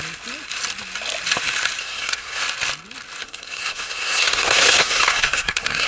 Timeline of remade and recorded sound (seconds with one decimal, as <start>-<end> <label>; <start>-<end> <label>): 0.0-1.8 recorded; 1.8-2.4 remade; 2.4-3.2 recorded; 3.2-5.9 remade